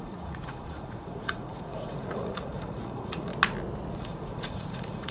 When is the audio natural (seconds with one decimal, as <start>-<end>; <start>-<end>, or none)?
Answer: 3.3-3.9

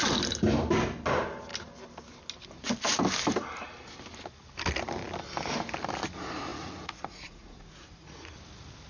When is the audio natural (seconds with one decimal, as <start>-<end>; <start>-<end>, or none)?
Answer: 0.0-6.5; 8.3-8.9

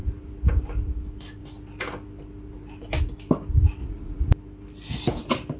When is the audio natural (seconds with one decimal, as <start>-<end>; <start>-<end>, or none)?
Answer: 0.0-3.8; 4.3-5.6

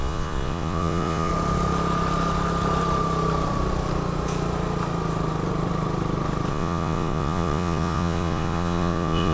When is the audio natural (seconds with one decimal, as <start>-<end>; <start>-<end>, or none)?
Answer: 1.3-6.5

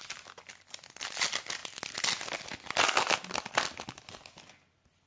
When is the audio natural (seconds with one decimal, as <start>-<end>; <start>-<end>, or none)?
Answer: 0.0-5.1

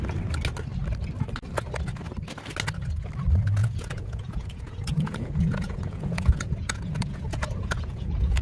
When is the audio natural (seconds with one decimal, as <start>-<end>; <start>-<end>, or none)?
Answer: 0.0-3.6